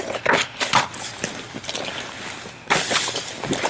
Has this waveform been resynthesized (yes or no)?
no